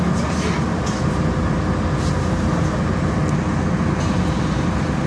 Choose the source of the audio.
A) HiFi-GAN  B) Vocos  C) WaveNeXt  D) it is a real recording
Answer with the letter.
D